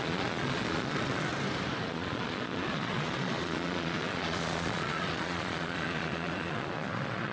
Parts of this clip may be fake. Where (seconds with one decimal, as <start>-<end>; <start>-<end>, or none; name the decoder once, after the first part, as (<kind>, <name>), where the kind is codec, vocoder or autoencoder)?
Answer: 0.0-1.3 (vocoder, Vocos); 1.8-7.3